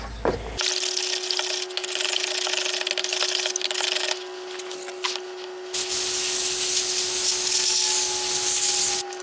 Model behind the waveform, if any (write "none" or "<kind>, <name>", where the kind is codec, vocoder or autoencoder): none